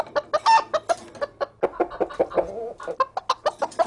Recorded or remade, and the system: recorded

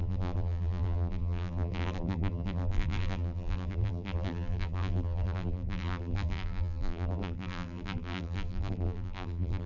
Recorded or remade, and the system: remade, vocoder, BigVGAN v2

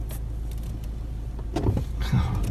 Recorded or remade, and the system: recorded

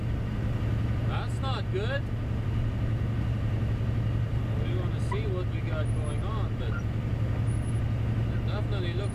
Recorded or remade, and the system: recorded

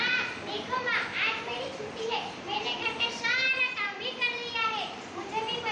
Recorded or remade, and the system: remade, vocoder, BigVGAN v2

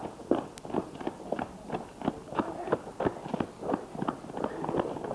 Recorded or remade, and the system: recorded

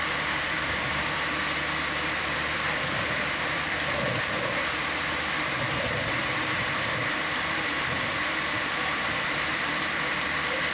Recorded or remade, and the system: remade, vocoder, BigVGAN v2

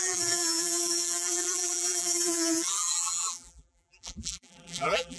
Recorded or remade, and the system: remade, vocoder, BigVGAN v2